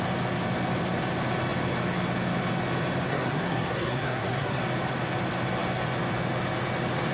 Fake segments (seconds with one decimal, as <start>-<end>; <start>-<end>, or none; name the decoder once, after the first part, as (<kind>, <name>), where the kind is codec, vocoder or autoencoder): 3.1-4.6 (codec, SNAC)